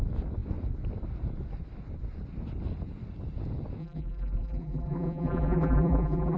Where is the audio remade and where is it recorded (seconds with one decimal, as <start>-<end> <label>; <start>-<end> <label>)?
0.0-3.8 recorded; 3.8-6.4 remade